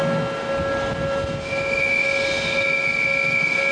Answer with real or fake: real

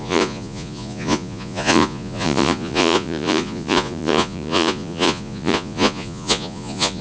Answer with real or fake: fake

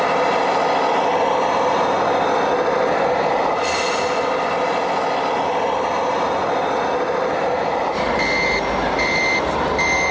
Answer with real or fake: real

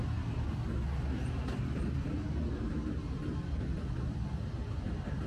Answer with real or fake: real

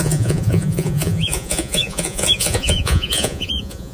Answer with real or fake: fake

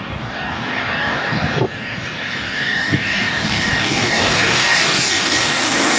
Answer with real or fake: fake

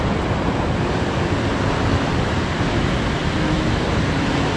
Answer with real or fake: real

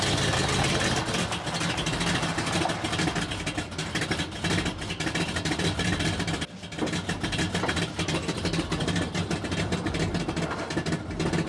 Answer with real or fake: real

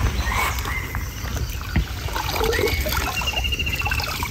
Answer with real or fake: real